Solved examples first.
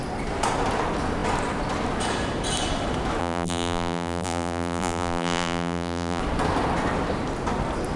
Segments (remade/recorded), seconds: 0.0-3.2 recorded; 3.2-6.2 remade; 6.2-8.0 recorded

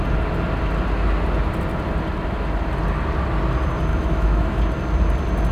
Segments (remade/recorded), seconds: 0.0-3.9 recorded; 3.9-4.6 remade; 4.6-5.5 recorded